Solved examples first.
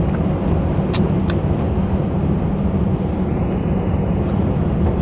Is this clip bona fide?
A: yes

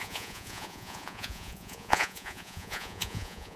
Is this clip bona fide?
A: no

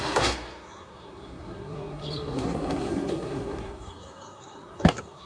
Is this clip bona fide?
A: no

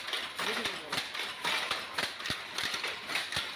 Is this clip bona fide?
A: yes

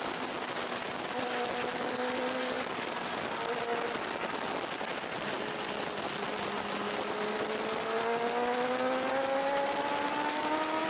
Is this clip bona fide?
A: yes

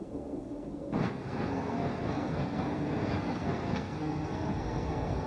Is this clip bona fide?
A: no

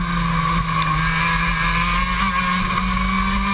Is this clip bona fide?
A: yes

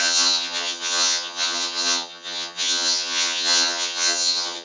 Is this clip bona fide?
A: no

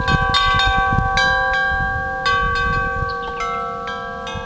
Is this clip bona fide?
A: yes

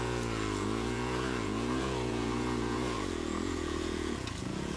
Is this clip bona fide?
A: no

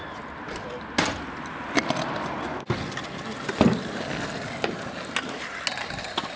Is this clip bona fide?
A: yes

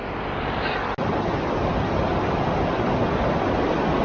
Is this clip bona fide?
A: yes